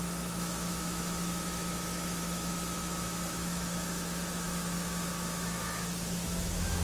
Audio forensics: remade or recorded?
remade